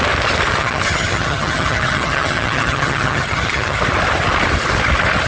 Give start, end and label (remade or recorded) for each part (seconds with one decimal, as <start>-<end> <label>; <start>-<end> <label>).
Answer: 0.0-0.6 recorded; 0.6-3.8 remade; 3.8-5.3 recorded